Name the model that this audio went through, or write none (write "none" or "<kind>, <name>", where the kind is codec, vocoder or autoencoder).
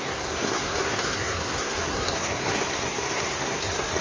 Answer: codec, SNAC